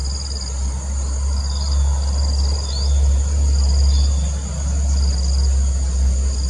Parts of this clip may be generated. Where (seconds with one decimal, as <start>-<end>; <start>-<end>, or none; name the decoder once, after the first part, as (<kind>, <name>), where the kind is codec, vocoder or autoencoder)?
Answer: none

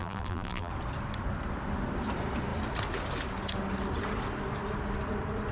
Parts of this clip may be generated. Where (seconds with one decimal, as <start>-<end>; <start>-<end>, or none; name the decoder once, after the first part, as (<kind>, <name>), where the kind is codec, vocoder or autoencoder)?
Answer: 0.0-0.7 (vocoder, BigVGAN v2)

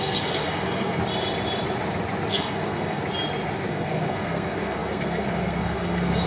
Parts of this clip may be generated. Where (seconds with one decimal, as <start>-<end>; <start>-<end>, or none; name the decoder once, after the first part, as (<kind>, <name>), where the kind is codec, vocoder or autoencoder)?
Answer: 0.0-1.0 (codec, SNAC); 2.3-3.0; 3.7-6.3

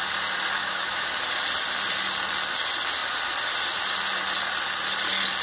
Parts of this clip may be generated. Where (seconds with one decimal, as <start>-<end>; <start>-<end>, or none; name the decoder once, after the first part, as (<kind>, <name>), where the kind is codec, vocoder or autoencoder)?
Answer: 0.6-1.1 (autoencoder, DAC-VAE)

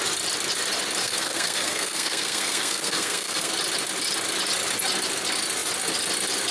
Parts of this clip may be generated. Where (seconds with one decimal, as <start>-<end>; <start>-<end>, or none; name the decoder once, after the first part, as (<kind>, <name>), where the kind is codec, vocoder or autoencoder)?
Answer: 1.0-3.5 (codec, SNAC)

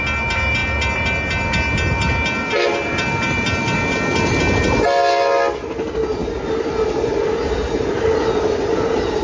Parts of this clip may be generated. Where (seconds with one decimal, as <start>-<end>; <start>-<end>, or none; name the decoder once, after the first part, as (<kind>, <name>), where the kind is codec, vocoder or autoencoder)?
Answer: none

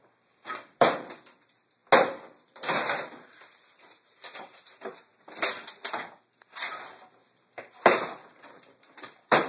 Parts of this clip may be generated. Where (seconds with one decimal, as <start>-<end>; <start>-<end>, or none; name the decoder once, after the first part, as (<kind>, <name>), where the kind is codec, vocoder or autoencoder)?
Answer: 0.0-1.8 (vocoder, BigVGAN v2); 2.5-5.1; 6.7-9.5

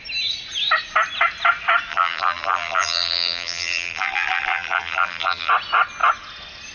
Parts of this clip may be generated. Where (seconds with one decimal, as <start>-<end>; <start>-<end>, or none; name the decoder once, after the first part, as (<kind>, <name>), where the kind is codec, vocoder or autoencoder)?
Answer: 1.9-5.5 (vocoder, BigVGAN v2)